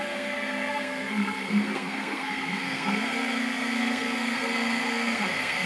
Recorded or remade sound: remade